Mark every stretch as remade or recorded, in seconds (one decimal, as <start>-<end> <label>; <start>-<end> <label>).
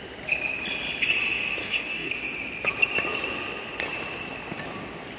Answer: 0.0-1.6 recorded; 1.6-2.1 remade; 2.1-5.2 recorded